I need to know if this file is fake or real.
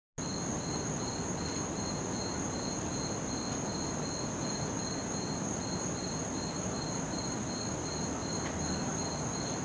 real